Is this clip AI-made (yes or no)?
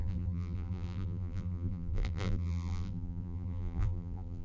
yes